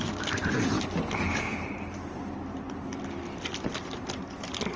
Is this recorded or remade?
recorded